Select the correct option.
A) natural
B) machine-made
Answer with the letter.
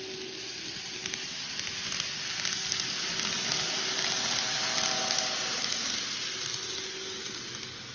A